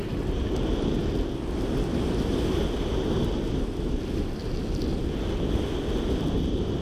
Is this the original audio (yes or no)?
yes